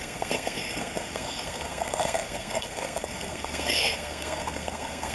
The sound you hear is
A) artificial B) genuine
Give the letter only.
A